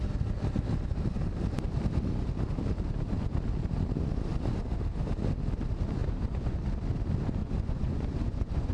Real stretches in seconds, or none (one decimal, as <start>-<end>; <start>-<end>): 0.0-6.0; 6.6-7.4